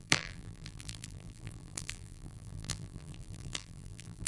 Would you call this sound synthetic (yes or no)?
yes